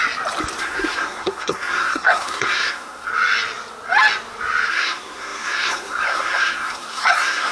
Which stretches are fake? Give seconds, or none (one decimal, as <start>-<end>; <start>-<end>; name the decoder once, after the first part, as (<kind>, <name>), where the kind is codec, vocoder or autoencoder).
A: 0.6-3.1 (codec, SNAC); 4.7-7.5